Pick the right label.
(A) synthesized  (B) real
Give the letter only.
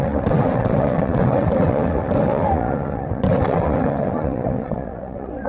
A